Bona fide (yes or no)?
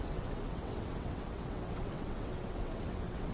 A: no